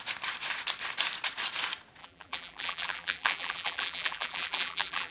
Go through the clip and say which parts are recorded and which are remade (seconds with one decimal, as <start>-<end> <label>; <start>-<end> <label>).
0.0-2.0 recorded; 2.0-5.1 remade